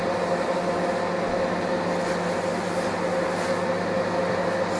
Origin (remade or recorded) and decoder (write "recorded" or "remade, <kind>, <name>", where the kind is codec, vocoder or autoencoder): recorded